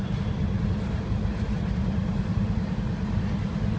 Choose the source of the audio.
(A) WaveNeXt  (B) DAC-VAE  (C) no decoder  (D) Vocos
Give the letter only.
C